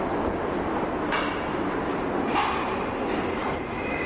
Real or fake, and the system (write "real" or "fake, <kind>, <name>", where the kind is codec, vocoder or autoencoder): real